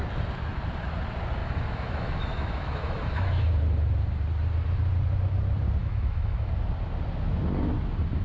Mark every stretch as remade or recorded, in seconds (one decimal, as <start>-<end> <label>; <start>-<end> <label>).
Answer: 0.0-1.4 recorded; 1.4-3.5 remade; 3.5-5.8 recorded; 5.8-6.5 remade; 6.5-8.2 recorded